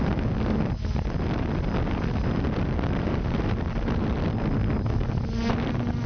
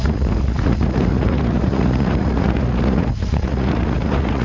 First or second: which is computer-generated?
second